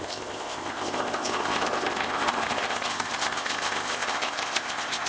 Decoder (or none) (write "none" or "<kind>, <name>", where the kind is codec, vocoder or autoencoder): codec, ZipCodec